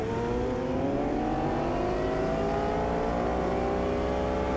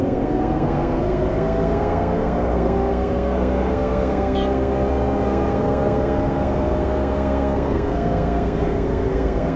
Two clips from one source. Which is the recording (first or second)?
first